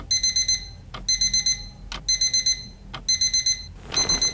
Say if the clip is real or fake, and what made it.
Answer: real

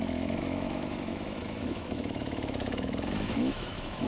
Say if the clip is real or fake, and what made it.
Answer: fake, autoencoder, DAC-VAE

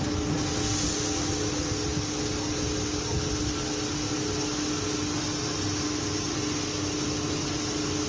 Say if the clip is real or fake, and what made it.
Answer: real